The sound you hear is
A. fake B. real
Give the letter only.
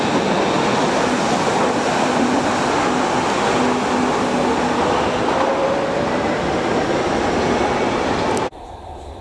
B